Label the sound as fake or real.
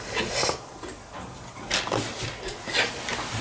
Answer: real